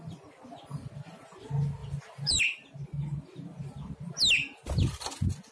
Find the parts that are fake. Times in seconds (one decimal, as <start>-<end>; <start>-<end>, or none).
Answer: none